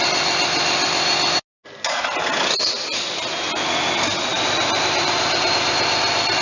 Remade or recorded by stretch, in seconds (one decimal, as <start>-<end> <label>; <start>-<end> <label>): 0.0-4.3 recorded; 4.3-5.5 remade; 5.5-6.4 recorded